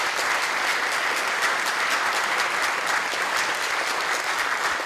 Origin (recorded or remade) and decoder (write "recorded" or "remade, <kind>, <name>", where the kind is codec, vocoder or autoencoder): recorded